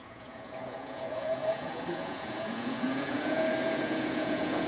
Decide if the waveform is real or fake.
fake